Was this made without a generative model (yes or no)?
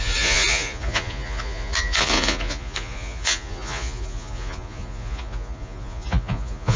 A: no